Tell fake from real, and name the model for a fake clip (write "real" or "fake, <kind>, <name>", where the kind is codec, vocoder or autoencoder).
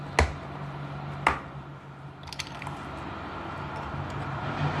real